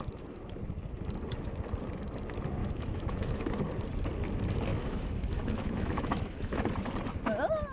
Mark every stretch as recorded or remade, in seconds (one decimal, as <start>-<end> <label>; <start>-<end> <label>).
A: 0.0-2.6 recorded; 2.6-3.6 remade; 3.6-4.7 recorded; 4.7-6.6 remade; 6.6-7.7 recorded